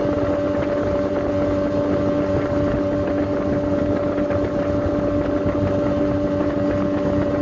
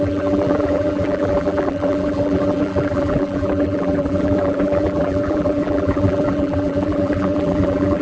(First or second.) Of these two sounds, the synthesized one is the second